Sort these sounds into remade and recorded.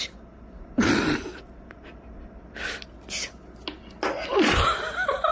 recorded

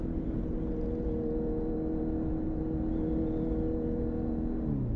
recorded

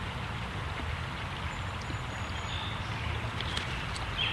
recorded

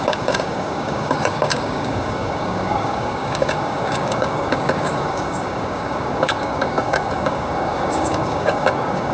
remade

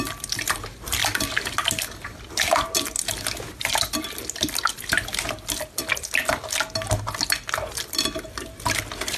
recorded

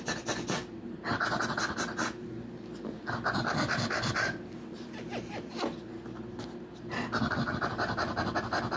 recorded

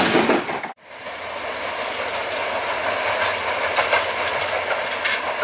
recorded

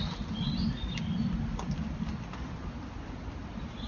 recorded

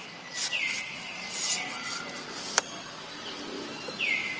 recorded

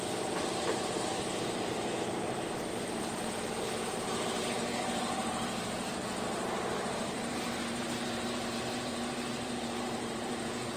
remade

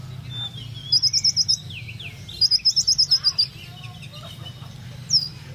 recorded